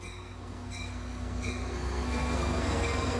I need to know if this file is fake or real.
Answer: fake